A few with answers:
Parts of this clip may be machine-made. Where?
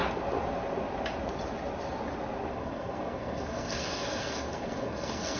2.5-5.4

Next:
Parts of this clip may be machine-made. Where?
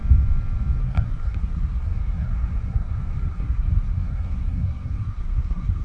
0.8-5.8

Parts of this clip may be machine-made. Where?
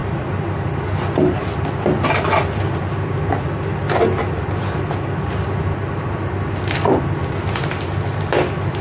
none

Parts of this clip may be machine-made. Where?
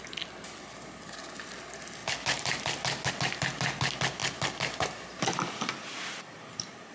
none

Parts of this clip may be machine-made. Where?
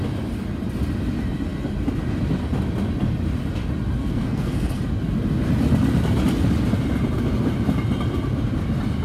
4.0-4.8